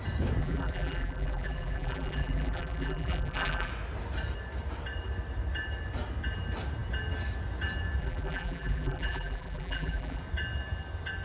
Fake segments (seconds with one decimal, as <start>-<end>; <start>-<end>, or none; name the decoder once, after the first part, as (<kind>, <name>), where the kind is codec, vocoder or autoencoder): 0.4-3.7 (vocoder, BigVGAN v2); 8.0-10.2